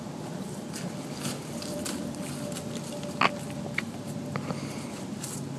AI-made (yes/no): no